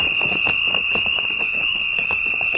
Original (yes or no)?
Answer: no